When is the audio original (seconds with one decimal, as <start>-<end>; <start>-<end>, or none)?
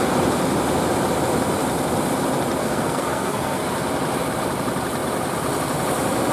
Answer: 0.0-2.6; 3.6-6.3